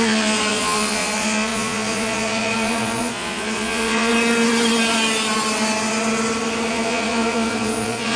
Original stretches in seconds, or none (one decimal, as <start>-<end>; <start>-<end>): 4.1-6.7